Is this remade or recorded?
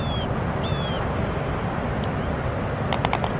recorded